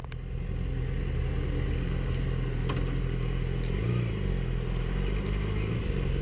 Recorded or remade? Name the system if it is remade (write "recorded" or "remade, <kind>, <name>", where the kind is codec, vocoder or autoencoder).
recorded